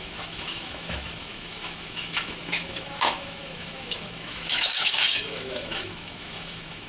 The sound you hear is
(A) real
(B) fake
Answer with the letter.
B